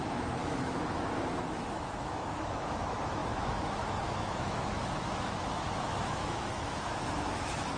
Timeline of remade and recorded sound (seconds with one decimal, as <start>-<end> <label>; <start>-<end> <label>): 0.0-7.8 remade